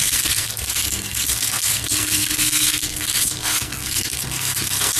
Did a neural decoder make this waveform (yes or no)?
yes